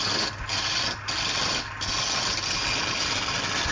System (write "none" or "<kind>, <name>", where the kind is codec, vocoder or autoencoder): none